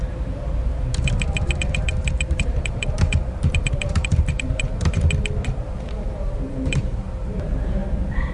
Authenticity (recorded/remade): remade